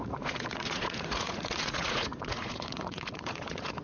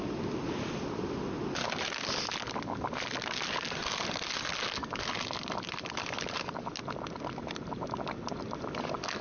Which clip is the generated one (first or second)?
first